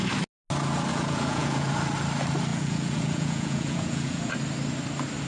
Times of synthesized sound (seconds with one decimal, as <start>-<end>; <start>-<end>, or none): 0.9-1.7; 2.5-4.3